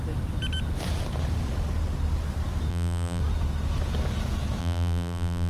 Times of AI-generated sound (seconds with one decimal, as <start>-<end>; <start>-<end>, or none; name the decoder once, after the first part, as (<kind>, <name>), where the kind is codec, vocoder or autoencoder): 2.7-3.2 (vocoder, BigVGAN v2); 4.6-5.5